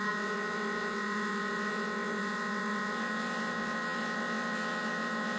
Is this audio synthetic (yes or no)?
yes